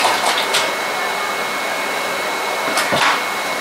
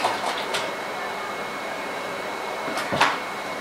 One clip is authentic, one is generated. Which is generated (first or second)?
second